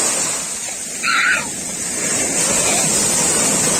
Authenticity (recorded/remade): recorded